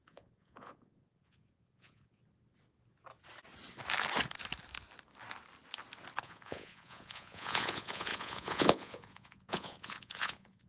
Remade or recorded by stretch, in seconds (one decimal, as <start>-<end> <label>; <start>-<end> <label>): 0.0-2.2 remade; 2.2-6.2 recorded; 6.2-10.7 remade

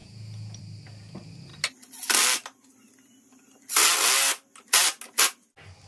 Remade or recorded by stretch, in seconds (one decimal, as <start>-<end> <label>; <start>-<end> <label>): 0.0-0.6 remade; 0.6-5.9 recorded

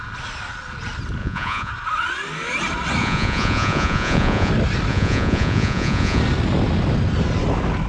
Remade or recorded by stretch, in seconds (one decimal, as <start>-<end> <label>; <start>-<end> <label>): 0.0-1.2 recorded; 1.2-1.7 remade; 1.7-3.0 recorded; 3.0-4.5 remade; 4.5-4.9 recorded; 4.9-6.2 remade; 6.2-7.9 recorded

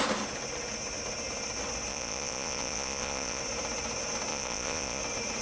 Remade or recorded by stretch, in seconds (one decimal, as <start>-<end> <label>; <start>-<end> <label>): 0.0-1.9 recorded; 1.9-3.4 remade; 3.4-4.3 recorded; 4.3-5.0 remade; 5.0-5.4 recorded

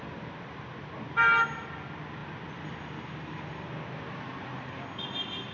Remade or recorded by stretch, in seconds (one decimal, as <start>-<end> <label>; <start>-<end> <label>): 0.0-5.5 recorded

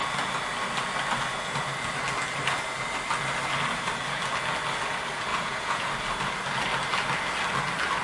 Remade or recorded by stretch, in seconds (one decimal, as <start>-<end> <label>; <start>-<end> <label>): 0.0-5.3 recorded; 5.3-5.9 remade; 5.9-8.0 recorded